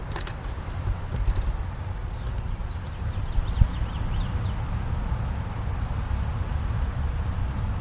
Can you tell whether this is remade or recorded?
remade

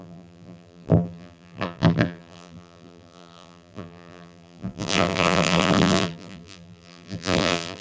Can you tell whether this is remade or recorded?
remade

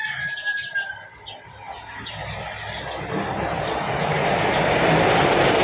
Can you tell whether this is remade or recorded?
recorded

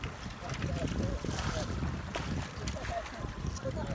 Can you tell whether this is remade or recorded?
recorded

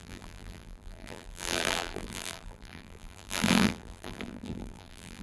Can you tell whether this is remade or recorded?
remade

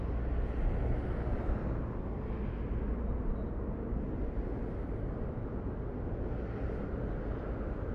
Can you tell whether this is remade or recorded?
recorded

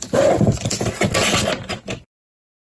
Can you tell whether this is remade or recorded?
remade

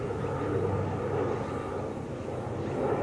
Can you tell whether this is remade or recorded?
recorded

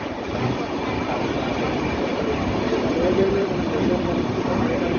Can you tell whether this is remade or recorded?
remade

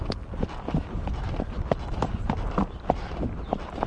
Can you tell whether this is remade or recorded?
recorded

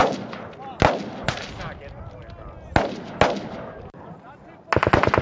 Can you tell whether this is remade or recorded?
recorded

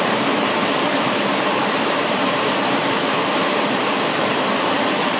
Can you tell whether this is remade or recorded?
remade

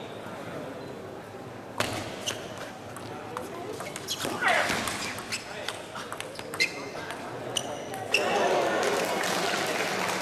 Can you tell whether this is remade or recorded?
recorded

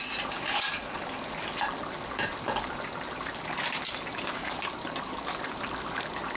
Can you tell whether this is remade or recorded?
remade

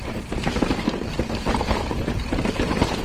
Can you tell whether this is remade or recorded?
remade